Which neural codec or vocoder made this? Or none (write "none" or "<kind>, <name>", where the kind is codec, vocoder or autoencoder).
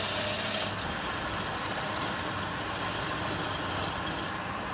none